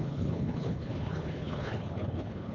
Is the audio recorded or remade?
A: remade